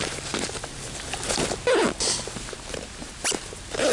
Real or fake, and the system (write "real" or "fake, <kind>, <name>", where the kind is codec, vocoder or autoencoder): real